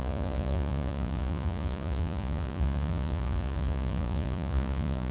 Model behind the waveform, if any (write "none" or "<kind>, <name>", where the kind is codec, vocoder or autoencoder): vocoder, Vocos